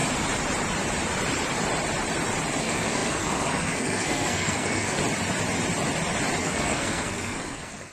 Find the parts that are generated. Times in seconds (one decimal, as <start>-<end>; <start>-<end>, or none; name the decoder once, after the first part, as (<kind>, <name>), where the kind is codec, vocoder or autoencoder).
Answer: 2.6-5.0 (codec, SNAC); 6.4-7.9